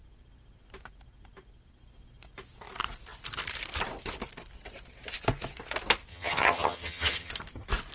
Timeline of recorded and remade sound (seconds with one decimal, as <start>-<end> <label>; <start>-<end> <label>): 0.0-6.1 recorded; 6.1-7.3 remade; 7.3-7.9 recorded